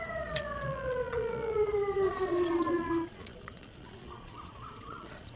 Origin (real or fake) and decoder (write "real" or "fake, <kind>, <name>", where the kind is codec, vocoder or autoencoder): fake, vocoder, Vocos